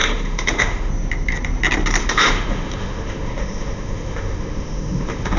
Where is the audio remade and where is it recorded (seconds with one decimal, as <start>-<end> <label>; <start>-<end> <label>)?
0.0-0.9 remade; 0.9-2.0 recorded; 2.0-5.4 remade